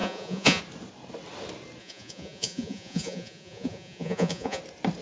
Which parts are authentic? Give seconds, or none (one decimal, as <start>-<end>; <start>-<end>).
0.6-1.8; 4.6-5.0